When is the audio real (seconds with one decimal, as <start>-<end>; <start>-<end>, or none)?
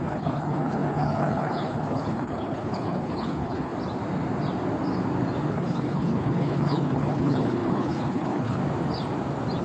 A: 3.7-5.5; 8.6-9.6